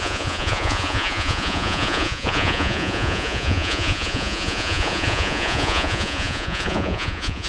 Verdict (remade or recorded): remade